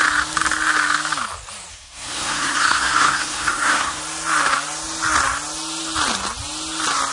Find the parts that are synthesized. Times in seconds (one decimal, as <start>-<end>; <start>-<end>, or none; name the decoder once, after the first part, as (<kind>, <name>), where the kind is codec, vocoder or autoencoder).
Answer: 1.7-4.0 (codec, SNAC)